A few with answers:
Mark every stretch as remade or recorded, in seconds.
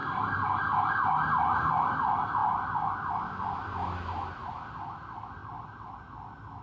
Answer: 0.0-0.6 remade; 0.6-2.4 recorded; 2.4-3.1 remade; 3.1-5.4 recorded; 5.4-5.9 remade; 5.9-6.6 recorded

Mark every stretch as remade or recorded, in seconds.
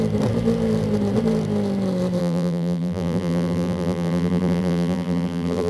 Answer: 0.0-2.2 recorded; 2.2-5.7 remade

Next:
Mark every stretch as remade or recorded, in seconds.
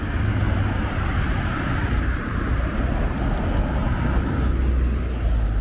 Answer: 0.0-5.6 recorded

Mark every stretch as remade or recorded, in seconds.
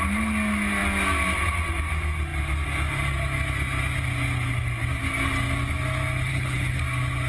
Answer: 0.0-6.3 recorded; 6.3-6.8 remade; 6.8-7.3 recorded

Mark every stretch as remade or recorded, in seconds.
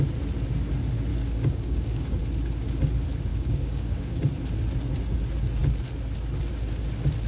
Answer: 0.0-1.1 recorded; 1.1-2.2 remade; 2.2-3.3 recorded; 3.3-4.2 remade; 4.2-7.3 recorded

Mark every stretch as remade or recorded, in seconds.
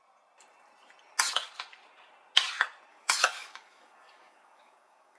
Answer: 0.0-2.9 recorded; 2.9-5.2 remade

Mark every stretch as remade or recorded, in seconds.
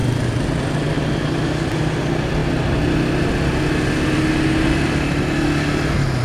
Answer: 0.0-6.2 recorded